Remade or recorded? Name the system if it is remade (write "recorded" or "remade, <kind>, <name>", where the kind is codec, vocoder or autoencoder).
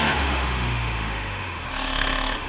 remade, autoencoder, DAC-VAE